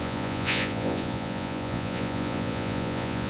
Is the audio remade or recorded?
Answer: remade